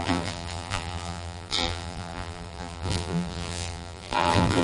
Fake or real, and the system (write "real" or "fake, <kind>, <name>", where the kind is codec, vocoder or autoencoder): fake, vocoder, BigVGAN v2